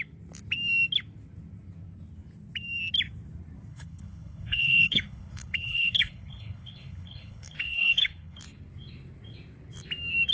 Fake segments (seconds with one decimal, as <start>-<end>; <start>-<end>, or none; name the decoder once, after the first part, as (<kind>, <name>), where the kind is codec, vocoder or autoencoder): 3.7-8.4 (codec, HILCodec)